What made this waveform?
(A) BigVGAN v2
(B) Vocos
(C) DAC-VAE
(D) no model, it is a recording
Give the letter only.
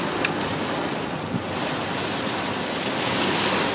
D